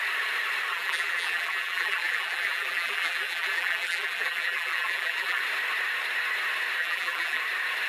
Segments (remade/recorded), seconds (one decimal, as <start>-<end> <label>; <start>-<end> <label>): 0.0-0.7 recorded; 0.7-5.4 remade; 5.4-6.8 recorded; 6.8-7.4 remade; 7.4-7.9 recorded